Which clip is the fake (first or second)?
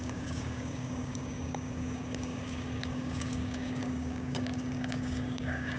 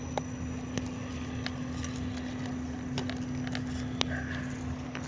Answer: first